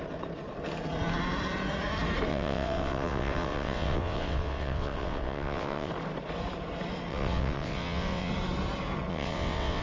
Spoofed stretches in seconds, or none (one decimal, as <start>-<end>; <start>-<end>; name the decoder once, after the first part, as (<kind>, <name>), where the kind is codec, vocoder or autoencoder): 2.3-5.9 (vocoder, WaveNeXt); 7.1-8.3; 9.1-9.8